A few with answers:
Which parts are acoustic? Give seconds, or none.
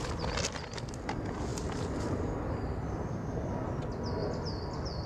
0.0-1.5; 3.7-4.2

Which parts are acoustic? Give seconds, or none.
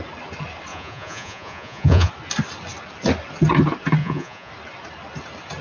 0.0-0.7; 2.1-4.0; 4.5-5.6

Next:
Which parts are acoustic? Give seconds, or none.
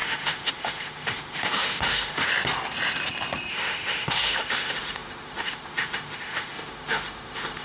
2.3-3.5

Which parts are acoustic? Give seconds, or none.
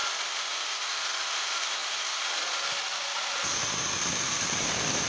0.0-1.8; 2.3-2.9; 3.6-5.1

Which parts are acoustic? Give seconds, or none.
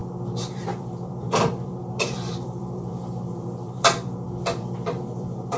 0.0-0.5